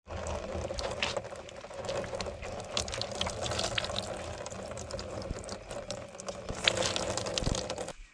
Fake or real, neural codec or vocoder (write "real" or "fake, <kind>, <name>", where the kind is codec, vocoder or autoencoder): real